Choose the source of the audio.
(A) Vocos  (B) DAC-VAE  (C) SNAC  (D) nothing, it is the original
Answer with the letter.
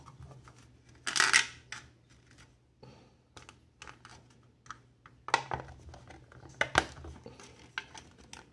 D